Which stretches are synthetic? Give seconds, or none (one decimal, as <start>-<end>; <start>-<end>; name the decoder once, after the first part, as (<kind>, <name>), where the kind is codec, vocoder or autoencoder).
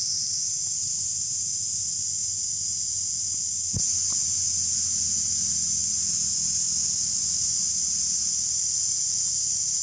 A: none